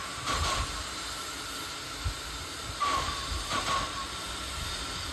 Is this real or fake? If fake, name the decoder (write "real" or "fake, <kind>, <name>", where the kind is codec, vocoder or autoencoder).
real